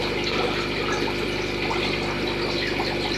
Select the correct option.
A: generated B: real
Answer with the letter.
B